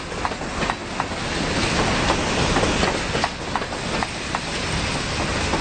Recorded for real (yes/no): yes